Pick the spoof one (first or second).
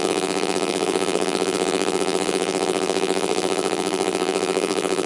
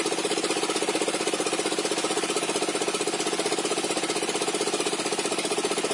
first